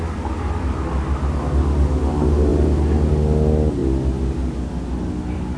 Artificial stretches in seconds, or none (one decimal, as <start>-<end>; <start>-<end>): none